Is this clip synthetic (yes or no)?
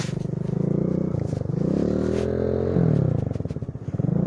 no